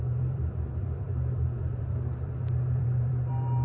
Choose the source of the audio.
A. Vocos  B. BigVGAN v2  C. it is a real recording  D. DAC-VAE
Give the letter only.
B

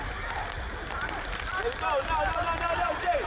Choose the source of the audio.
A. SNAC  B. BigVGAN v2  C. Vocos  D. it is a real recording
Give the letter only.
D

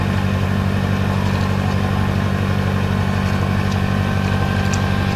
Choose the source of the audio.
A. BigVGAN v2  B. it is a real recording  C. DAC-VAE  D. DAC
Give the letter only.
B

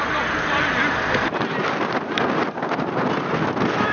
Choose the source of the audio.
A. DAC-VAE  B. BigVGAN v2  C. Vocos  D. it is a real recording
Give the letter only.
D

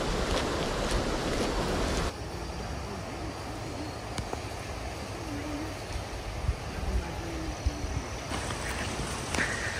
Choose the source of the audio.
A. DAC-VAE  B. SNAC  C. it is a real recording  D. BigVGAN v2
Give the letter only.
C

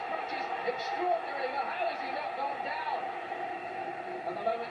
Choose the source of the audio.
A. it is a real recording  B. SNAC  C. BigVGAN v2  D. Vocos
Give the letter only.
C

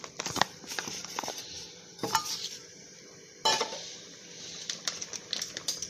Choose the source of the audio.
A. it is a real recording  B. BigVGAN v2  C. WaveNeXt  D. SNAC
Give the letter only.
B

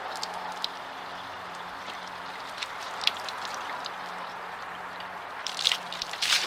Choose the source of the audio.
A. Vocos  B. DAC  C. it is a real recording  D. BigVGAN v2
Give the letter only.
D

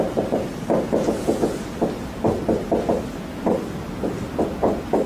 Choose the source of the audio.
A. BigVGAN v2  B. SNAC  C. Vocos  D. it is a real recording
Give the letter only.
D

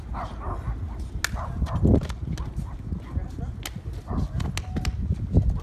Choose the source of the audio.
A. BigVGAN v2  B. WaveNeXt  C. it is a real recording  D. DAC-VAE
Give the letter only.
C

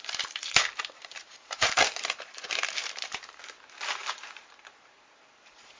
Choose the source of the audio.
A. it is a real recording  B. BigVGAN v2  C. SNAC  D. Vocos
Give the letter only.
B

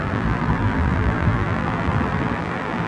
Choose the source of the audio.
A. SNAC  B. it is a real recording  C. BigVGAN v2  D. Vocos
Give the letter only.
C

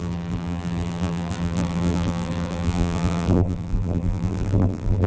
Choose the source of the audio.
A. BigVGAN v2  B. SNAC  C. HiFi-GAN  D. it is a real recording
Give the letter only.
A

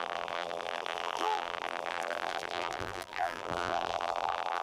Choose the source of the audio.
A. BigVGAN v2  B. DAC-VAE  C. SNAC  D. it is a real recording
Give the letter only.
A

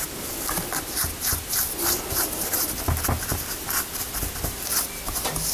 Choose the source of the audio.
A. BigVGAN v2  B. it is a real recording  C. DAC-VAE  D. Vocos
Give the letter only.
B